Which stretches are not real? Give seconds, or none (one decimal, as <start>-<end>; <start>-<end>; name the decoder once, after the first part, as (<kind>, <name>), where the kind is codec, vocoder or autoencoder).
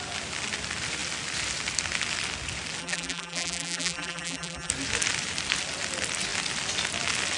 2.8-4.7 (vocoder, BigVGAN v2)